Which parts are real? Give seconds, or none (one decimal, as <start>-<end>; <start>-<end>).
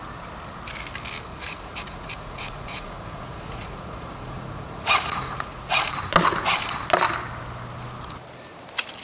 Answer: 0.0-1.3; 5.9-9.0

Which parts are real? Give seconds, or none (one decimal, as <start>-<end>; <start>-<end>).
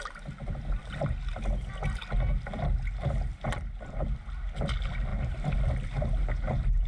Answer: 0.0-6.9